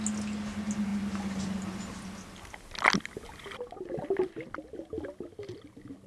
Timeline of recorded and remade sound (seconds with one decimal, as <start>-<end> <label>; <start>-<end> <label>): 0.0-6.1 recorded